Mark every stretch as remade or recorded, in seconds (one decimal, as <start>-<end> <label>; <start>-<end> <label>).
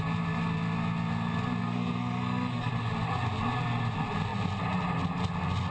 0.0-1.6 recorded; 1.6-2.7 remade; 2.7-5.7 recorded